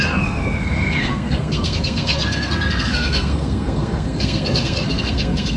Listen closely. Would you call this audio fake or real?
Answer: fake